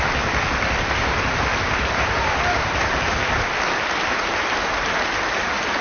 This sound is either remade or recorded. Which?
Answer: recorded